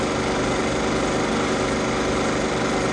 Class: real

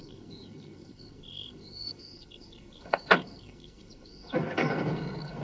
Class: fake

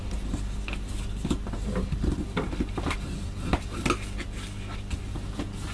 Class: real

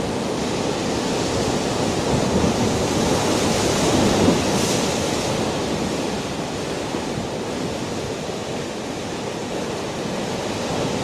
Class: real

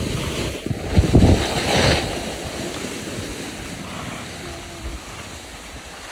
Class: real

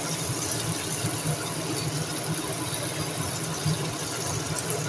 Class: real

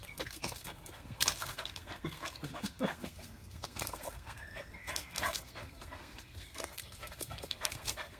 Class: fake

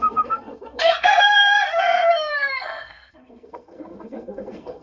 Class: fake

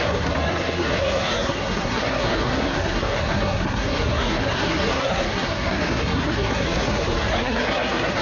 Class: fake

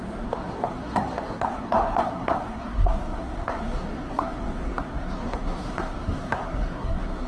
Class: fake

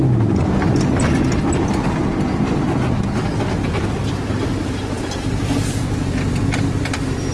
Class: real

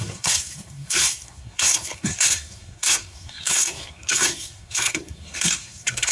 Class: fake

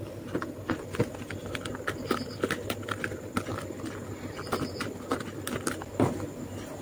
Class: real